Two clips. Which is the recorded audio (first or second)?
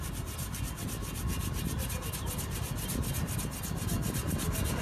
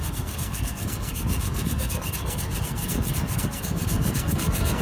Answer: first